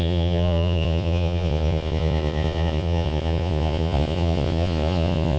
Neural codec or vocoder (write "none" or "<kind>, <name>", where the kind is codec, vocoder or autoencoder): vocoder, Vocos